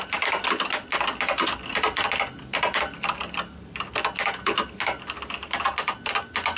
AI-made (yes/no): no